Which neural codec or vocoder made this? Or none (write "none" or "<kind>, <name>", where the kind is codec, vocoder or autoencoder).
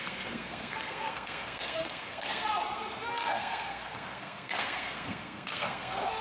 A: codec, SNAC